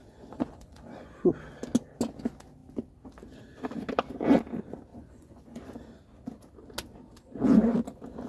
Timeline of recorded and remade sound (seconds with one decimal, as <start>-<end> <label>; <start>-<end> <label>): 0.0-1.3 remade; 1.3-4.9 recorded; 4.9-5.7 remade; 5.7-8.3 recorded